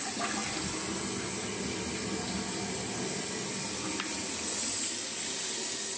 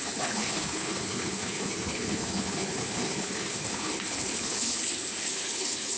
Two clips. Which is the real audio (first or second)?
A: first